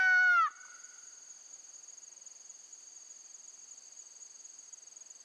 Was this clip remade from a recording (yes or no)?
no